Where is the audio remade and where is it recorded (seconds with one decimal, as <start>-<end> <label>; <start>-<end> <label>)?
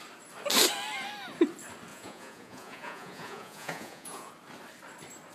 0.0-1.9 recorded; 1.9-4.3 remade; 4.3-5.3 recorded